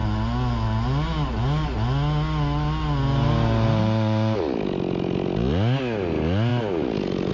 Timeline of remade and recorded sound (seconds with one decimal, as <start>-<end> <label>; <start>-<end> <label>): 0.0-7.3 recorded